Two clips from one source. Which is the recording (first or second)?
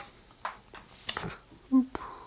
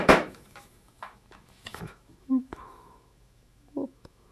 first